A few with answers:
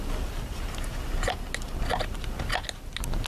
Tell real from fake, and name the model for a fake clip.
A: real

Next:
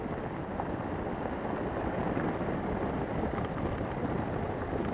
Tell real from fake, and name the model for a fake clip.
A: fake, vocoder, BigVGAN v2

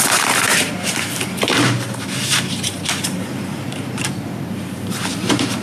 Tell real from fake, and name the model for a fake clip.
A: fake, vocoder, BigVGAN v2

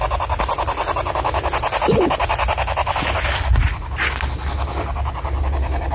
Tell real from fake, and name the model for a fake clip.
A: real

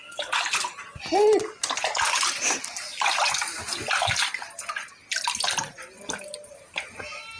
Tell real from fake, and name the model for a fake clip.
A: real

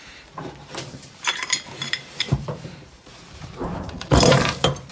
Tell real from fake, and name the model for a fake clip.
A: fake, vocoder, BigVGAN v2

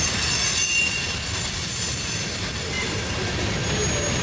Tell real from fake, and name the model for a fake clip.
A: real